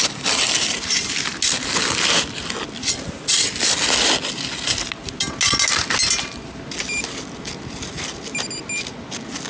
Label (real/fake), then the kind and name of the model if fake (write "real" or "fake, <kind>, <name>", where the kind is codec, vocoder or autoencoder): real